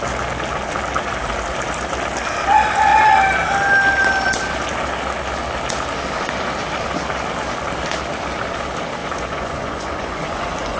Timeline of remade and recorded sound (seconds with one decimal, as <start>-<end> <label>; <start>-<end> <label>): 0.0-9.0 recorded; 9.0-10.8 remade